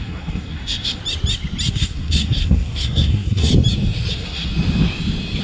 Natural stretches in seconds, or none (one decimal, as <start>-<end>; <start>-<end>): 1.0-1.7; 3.5-4.1; 4.5-5.4